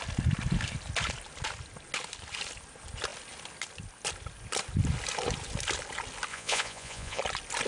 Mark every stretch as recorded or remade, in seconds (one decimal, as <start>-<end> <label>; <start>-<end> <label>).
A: 0.0-6.3 recorded; 6.3-7.2 remade; 7.2-7.7 recorded